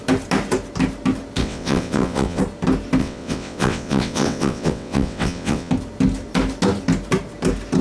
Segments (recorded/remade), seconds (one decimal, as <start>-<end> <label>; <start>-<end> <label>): 0.0-1.4 recorded; 1.4-2.4 remade; 2.4-3.0 recorded; 3.0-5.7 remade; 5.7-7.8 recorded